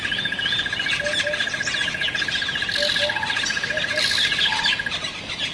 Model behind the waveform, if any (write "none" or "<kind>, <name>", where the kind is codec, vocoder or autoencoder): none